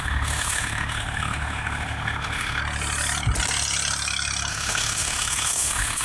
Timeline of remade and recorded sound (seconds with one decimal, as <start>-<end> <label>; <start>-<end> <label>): 0.0-2.6 remade; 2.6-4.5 recorded; 4.5-6.0 remade